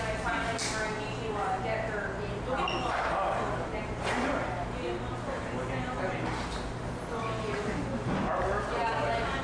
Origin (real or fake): real